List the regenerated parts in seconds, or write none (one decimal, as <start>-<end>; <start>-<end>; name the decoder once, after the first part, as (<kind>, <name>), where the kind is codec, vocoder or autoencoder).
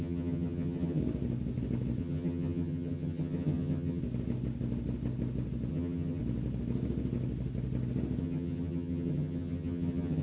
0.0-1.0 (vocoder, HiFi-GAN); 2.0-4.0; 5.7-6.2; 8.2-10.2